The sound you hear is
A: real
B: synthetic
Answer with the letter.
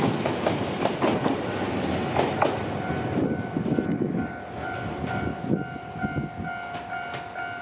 A